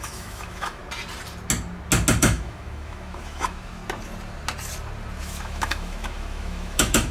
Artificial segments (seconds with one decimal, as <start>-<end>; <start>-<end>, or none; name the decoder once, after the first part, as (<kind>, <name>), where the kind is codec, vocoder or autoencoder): 0.0-0.8 (autoencoder, DAC-VAE); 2.2-3.8; 5.2-7.1

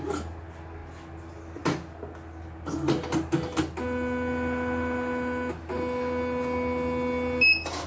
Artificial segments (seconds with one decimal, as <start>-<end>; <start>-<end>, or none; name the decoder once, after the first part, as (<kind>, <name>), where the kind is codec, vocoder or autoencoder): none

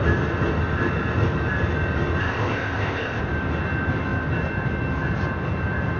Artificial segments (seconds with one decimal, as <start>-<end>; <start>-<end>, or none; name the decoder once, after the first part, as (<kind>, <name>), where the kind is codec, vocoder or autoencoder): 2.2-3.2 (codec, ZipCodec)